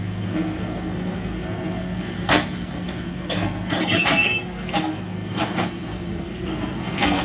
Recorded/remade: remade